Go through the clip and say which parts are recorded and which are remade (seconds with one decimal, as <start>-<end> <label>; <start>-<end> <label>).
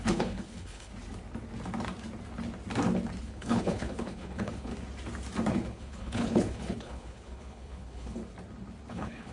0.0-0.9 remade; 0.9-3.2 recorded; 3.2-4.7 remade; 4.7-5.5 recorded; 5.5-8.2 remade; 8.2-8.9 recorded; 8.9-9.3 remade